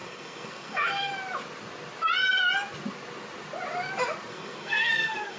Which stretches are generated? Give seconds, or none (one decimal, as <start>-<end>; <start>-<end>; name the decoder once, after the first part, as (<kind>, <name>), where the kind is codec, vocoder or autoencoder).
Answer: 0.0-1.1 (codec, SNAC); 4.3-5.4